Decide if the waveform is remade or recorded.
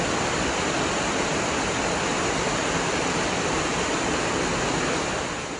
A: recorded